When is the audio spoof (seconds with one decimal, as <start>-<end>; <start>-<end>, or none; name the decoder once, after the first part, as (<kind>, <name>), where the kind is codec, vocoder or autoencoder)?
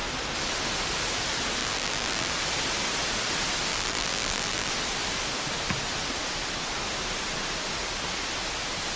1.6-2.3 (vocoder, BigVGAN v2); 3.7-4.7